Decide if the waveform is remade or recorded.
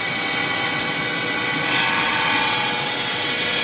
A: remade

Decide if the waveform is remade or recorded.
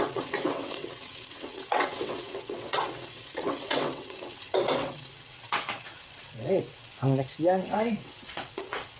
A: remade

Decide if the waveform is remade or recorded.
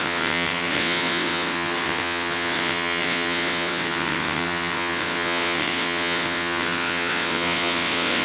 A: remade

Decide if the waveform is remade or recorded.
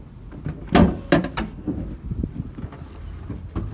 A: recorded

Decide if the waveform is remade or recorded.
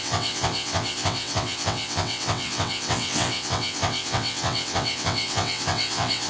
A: remade